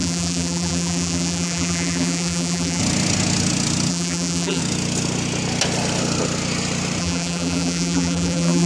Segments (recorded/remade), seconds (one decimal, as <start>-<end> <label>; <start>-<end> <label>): 0.0-2.8 remade; 2.8-3.9 recorded; 3.9-4.6 remade; 4.6-7.0 recorded; 7.0-8.7 remade